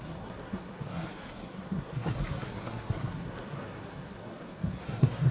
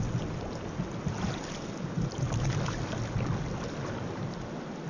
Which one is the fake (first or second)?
first